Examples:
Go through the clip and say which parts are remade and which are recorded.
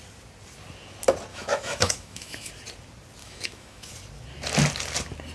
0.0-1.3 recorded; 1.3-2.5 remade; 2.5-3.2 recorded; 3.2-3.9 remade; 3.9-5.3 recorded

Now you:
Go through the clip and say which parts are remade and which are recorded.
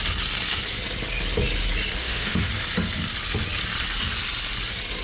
0.0-2.0 recorded; 2.0-2.5 remade; 2.5-5.0 recorded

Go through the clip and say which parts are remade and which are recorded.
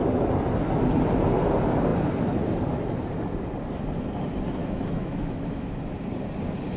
0.0-4.6 recorded; 4.6-5.7 remade; 5.7-6.8 recorded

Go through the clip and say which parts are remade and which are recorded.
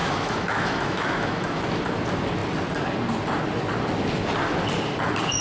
0.0-1.6 remade; 1.6-5.4 recorded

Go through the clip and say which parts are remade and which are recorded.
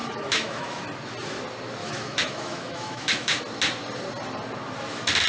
0.0-0.8 remade; 0.8-1.8 recorded; 1.8-3.4 remade; 3.4-5.3 recorded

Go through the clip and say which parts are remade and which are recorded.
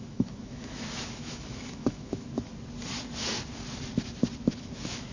0.0-2.5 remade; 2.5-4.6 recorded; 4.6-5.1 remade